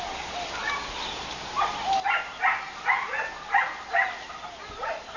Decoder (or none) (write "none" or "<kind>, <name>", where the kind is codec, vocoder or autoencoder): none